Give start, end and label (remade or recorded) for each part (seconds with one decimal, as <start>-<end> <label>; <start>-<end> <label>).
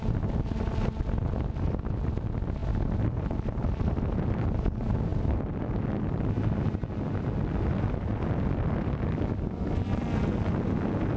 0.0-11.2 recorded